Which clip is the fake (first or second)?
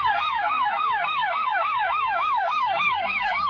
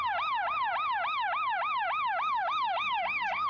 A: first